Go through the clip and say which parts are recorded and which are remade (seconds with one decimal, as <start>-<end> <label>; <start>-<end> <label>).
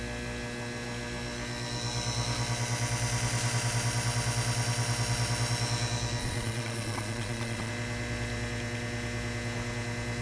0.0-6.2 recorded; 6.2-7.7 remade; 7.7-10.2 recorded